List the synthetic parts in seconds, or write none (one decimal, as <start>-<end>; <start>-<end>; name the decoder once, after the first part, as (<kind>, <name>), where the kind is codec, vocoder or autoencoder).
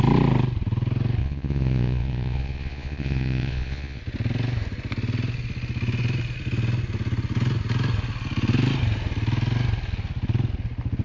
1.2-4.0 (vocoder, Vocos)